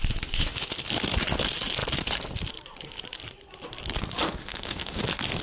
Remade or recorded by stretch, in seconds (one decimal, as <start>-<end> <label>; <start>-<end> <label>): 0.0-4.4 recorded; 4.4-5.0 remade; 5.0-5.4 recorded